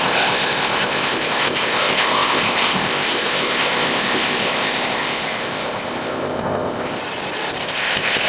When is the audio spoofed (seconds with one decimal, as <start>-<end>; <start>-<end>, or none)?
0.0-7.0; 7.6-8.3